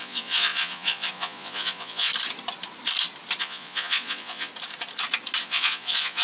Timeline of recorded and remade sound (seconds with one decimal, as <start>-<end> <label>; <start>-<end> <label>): 0.0-2.1 remade; 2.1-3.4 recorded; 3.4-4.5 remade; 4.5-5.4 recorded; 5.4-6.2 remade